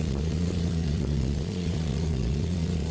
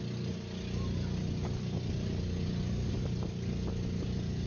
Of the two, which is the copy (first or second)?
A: first